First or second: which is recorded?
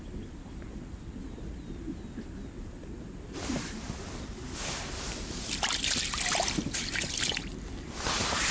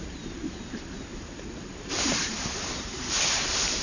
first